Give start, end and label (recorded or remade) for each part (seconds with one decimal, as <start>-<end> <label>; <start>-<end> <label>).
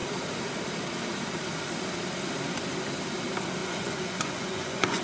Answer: 0.0-3.6 recorded; 3.6-5.0 remade